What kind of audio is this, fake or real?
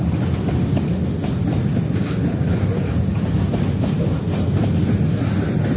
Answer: real